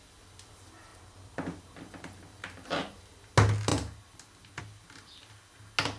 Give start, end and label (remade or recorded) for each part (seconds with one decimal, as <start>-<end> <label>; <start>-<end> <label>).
0.0-0.9 recorded; 0.9-1.6 remade; 1.6-6.0 recorded